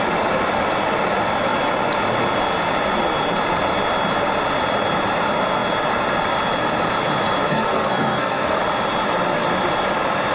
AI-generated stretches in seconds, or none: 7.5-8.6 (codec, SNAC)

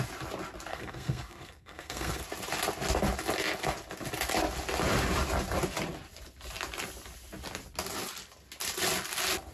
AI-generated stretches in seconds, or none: 0.7-2.2 (codec, SNAC)

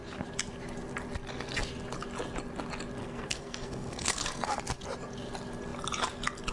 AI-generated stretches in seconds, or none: 3.0-4.6 (codec, SNAC)

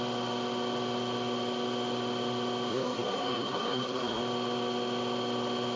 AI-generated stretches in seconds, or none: 2.7-4.2 (codec, SNAC)

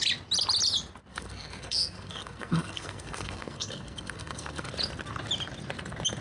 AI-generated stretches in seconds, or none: 1.1-4.7 (codec, SNAC)

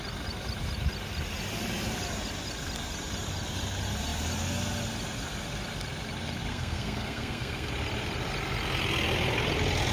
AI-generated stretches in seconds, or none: 6.5-7.7 (codec, SNAC)